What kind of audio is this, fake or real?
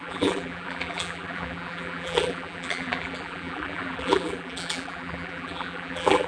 fake